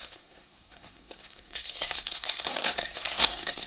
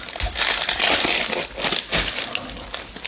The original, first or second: second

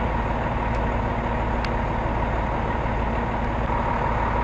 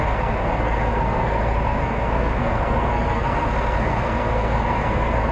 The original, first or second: first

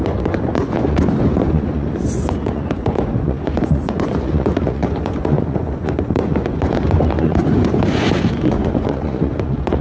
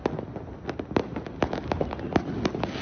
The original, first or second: second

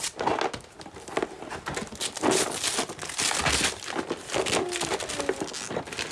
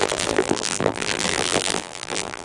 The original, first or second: first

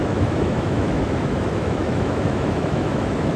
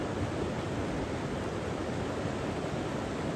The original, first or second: second